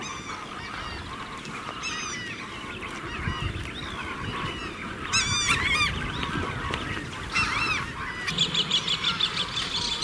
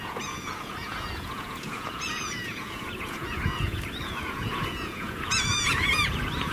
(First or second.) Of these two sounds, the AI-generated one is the second